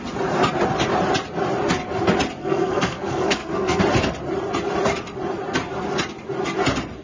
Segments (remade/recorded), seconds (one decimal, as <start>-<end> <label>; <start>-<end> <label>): 0.0-2.4 recorded; 2.4-3.8 remade; 3.8-7.0 recorded